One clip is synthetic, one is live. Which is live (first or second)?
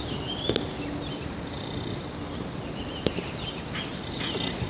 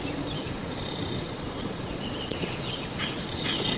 first